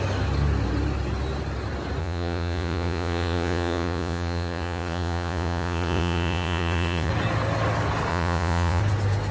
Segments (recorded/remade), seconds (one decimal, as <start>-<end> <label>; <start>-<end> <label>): 0.0-2.0 recorded; 2.0-7.1 remade; 7.1-8.1 recorded; 8.1-8.8 remade; 8.8-9.3 recorded